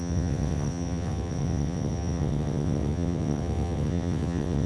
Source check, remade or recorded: remade